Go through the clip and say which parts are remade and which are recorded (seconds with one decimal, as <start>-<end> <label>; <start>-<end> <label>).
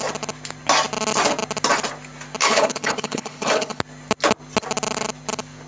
0.0-2.4 recorded; 2.4-3.8 remade; 3.8-5.7 recorded